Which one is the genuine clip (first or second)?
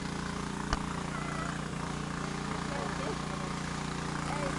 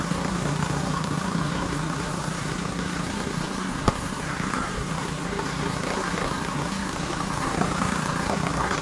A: first